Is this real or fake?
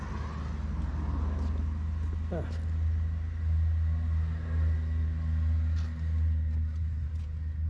real